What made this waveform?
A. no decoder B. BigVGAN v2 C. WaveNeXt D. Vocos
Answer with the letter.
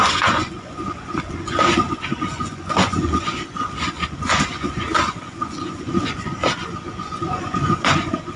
D